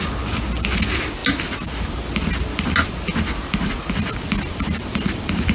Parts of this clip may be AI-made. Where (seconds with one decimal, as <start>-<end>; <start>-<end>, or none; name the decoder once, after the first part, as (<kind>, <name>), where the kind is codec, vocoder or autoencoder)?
none